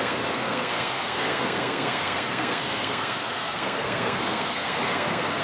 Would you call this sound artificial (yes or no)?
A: yes